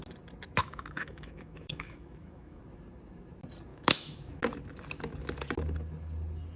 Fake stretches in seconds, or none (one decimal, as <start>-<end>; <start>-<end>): 0.6-2.6; 3.7-4.4

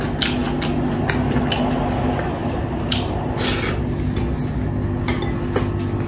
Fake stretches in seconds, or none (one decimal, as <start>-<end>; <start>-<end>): 2.4-3.3

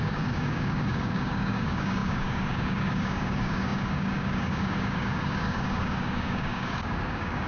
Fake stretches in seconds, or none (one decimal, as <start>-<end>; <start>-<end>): 0.0-7.5

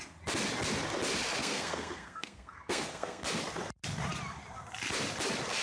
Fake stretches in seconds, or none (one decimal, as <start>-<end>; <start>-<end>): 1.4-3.2